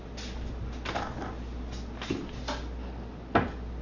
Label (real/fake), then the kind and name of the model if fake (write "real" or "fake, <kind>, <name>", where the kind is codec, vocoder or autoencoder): real